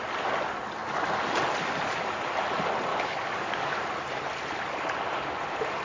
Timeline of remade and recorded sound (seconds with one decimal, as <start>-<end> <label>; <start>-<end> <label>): 0.0-2.9 recorded; 2.9-3.8 remade; 3.8-5.8 recorded